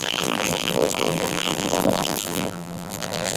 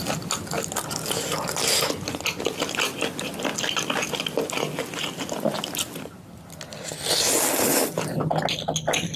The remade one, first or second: first